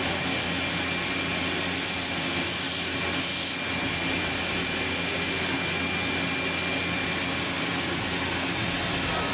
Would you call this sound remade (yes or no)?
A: no